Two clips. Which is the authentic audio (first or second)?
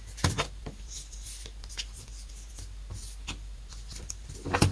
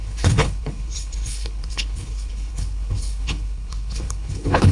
first